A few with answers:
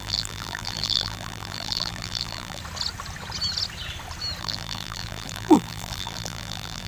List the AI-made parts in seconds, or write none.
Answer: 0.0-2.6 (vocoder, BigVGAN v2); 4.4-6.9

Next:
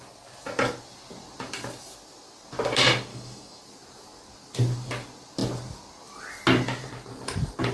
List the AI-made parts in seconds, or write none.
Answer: 3.1-3.6 (autoencoder, DAC-VAE)

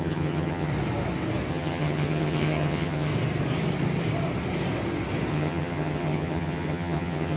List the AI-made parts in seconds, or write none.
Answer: 0.0-0.7 (vocoder, HiFi-GAN); 1.5-3.1; 5.3-7.4

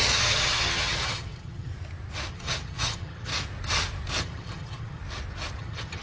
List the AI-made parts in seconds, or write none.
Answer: 0.0-1.7 (vocoder, HiFi-GAN); 2.3-3.3; 4.2-5.0; 5.6-6.0

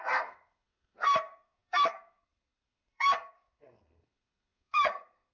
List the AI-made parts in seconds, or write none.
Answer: 0.0-5.3 (codec, SNAC)

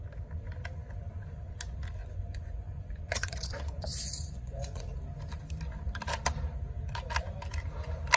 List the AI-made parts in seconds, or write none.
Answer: 2.0-4.9 (vocoder, Vocos)

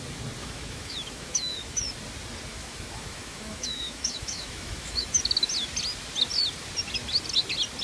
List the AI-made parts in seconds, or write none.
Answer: 0.4-1.9 (autoencoder, DAC-VAE); 2.5-5.2